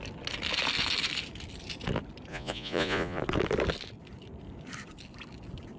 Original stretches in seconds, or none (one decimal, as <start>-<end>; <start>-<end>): 0.0-2.3; 3.2-5.8